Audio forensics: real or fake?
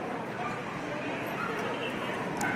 real